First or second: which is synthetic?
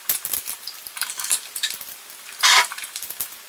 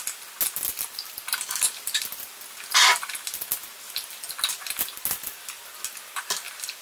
first